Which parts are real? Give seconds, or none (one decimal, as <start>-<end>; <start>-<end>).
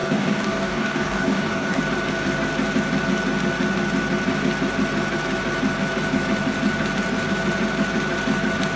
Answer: 1.8-8.8